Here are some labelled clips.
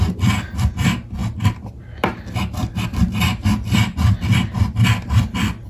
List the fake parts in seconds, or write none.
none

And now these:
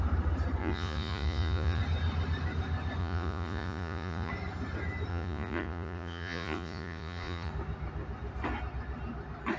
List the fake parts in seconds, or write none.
0.6-1.8 (vocoder, Vocos); 3.0-4.3; 5.1-7.5

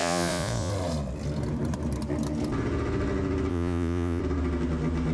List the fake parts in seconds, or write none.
0.0-0.7 (vocoder, Vocos); 3.5-4.2

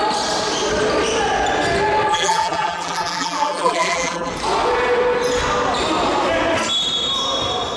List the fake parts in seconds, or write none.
2.1-4.3 (vocoder, BigVGAN v2)

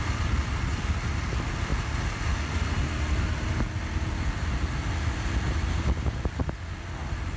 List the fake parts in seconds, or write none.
none